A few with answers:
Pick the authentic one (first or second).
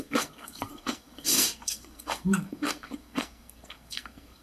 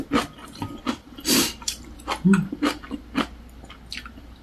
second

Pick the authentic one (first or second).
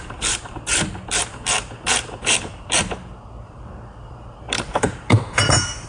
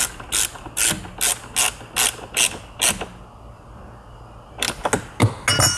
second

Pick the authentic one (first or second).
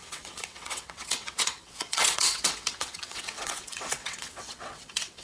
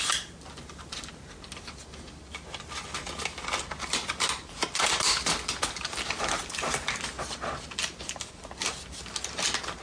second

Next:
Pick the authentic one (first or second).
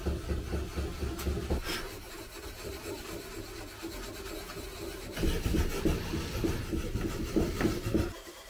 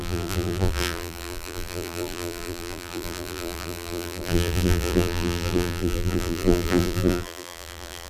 first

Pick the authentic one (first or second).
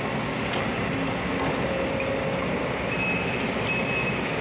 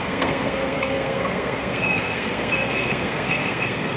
first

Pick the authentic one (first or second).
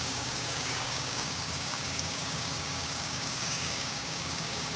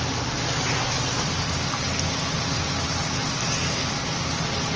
second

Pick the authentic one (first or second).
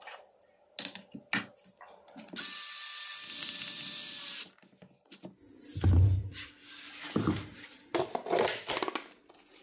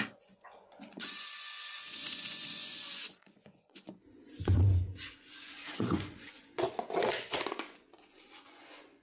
first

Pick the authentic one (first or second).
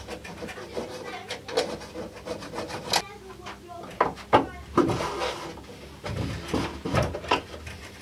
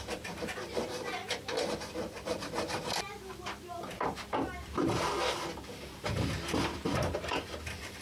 first